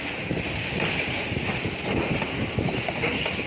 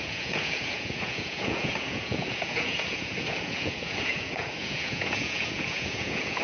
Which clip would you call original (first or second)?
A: first